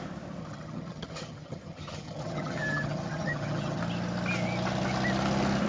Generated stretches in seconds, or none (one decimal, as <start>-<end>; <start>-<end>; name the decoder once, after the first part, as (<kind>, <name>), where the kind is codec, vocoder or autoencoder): 0.4-3.8 (vocoder, HiFi-GAN)